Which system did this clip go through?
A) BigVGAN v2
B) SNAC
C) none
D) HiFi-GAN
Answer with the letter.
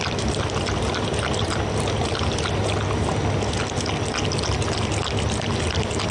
C